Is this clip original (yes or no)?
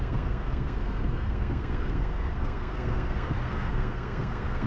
no